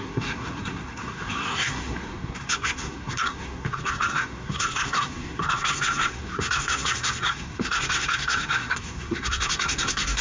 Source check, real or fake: fake